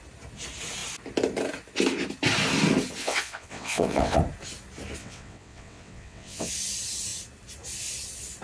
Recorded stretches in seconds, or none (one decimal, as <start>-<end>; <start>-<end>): 0.0-3.0; 4.2-5.0; 6.5-8.4